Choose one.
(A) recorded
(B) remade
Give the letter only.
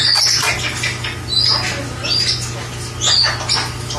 A